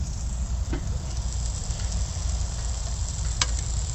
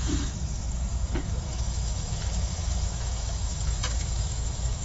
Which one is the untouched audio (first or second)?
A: first